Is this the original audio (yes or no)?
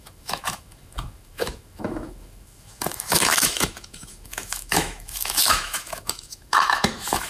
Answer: no